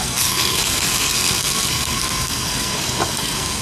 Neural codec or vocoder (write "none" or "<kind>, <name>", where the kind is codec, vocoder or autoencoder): codec, SNAC